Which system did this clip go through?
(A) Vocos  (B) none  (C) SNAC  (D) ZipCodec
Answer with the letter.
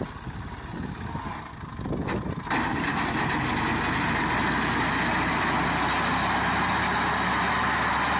B